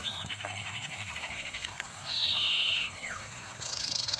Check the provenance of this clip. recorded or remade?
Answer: remade